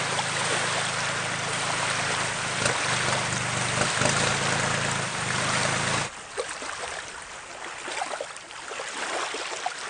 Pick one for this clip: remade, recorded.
recorded